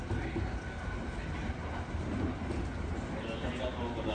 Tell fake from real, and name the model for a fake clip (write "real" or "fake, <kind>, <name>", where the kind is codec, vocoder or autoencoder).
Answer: real